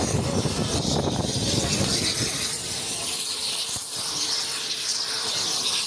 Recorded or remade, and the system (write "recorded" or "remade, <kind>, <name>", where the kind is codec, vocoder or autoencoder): recorded